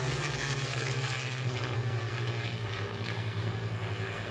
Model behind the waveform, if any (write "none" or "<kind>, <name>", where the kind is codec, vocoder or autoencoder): codec, SNAC